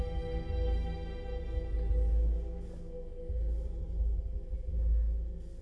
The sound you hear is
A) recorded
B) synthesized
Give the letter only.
A